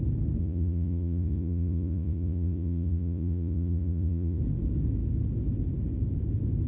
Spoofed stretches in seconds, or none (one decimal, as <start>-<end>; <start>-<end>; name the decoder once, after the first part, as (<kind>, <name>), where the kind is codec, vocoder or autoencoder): 0.4-4.4 (vocoder, Vocos)